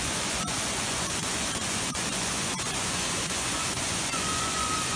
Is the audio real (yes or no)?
no